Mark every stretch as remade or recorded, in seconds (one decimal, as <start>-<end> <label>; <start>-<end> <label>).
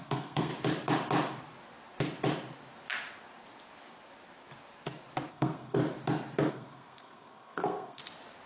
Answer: 0.0-0.5 remade; 0.5-5.3 recorded; 5.3-5.8 remade; 5.8-6.5 recorded; 6.5-8.0 remade; 8.0-8.5 recorded